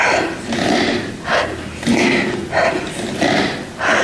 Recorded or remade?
recorded